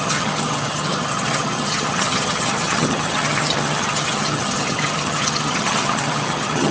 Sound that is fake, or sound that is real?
fake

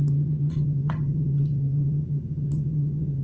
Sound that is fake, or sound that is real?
fake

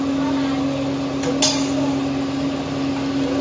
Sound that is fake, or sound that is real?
real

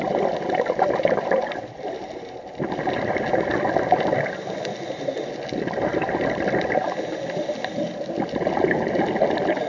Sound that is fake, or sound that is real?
real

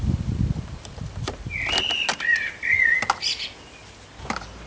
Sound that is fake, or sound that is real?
real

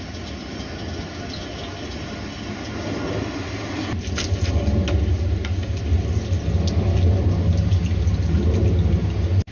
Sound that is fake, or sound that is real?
real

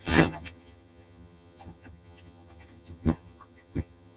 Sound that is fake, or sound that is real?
fake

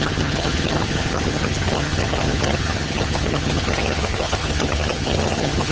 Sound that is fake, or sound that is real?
fake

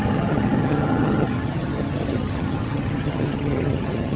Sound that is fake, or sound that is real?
fake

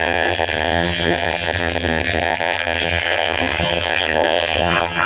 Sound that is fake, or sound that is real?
fake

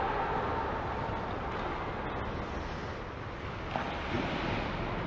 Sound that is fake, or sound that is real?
real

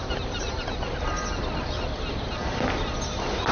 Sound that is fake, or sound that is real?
real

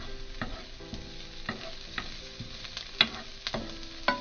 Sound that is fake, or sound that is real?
real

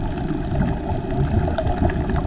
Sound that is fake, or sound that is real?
real